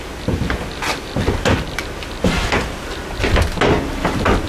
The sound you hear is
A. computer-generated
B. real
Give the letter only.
B